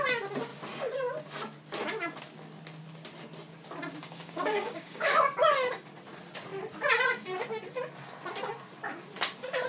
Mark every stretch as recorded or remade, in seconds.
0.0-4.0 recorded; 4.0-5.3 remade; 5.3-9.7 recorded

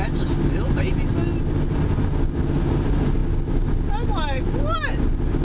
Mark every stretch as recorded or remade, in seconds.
0.0-5.4 recorded

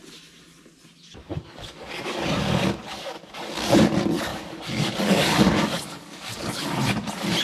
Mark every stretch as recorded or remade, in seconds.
0.0-1.2 recorded; 1.2-3.7 remade; 3.7-4.3 recorded; 4.3-6.7 remade; 6.7-7.4 recorded

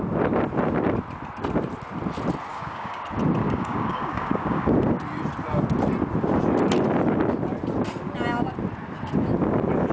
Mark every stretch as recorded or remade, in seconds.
0.0-2.5 recorded; 2.5-3.0 remade; 3.0-3.4 recorded; 3.4-4.7 remade; 4.7-9.9 recorded

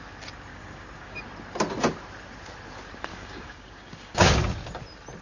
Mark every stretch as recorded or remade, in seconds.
0.0-0.5 recorded; 0.5-1.2 remade; 1.2-3.1 recorded; 3.1-4.3 remade; 4.3-5.2 recorded

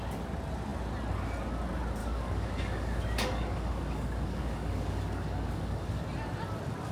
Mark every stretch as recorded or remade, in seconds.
0.0-2.0 recorded; 2.0-6.0 remade; 6.0-6.9 recorded